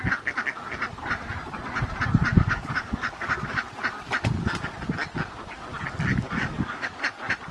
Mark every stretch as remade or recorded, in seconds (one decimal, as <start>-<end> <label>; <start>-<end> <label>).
0.0-2.3 recorded; 2.3-3.6 remade; 3.6-6.1 recorded; 6.1-7.0 remade; 7.0-7.5 recorded